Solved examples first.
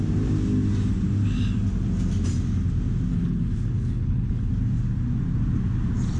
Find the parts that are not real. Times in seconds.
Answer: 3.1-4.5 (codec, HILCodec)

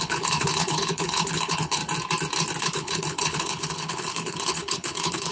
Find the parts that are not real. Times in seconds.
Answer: 0.0-1.8 (codec, HILCodec); 2.6-5.3

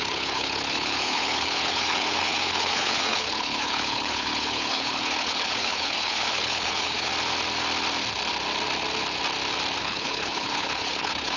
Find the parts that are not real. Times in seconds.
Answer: 0.0-7.1 (codec, HILCodec); 9.8-11.4

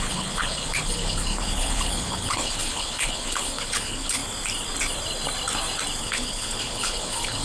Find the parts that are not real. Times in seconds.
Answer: 0.0-4.2 (codec, HILCodec); 6.0-7.4

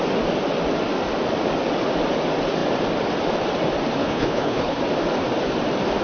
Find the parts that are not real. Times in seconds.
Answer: 4.0-4.8 (codec, HILCodec)

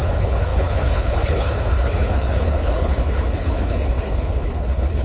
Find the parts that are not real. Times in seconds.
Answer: 0.0-5.0 (codec, HILCodec)

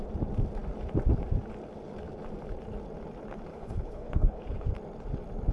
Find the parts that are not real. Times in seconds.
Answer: 3.5-4.7 (codec, HILCodec)

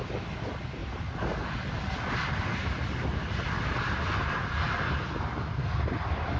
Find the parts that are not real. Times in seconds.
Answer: none